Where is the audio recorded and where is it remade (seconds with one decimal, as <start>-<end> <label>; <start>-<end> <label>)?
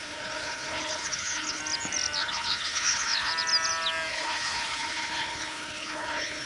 0.0-1.6 remade; 1.6-2.2 recorded; 2.2-3.3 remade; 3.3-4.1 recorded; 4.1-6.5 remade